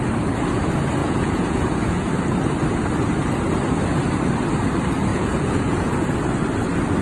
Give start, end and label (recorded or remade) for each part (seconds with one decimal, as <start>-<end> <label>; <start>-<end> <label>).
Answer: 0.0-1.0 recorded; 1.0-2.1 remade; 2.1-5.1 recorded; 5.1-5.9 remade; 5.9-7.0 recorded